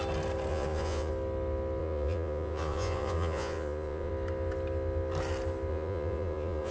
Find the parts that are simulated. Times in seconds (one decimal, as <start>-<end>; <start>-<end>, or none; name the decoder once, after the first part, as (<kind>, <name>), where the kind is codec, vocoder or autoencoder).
0.5-1.1 (vocoder, Vocos); 1.8-4.1; 5.7-6.7